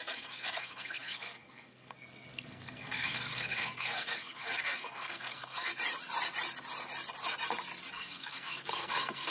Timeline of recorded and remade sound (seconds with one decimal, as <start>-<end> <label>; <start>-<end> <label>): 0.0-5.7 remade; 5.7-7.9 recorded; 7.9-9.3 remade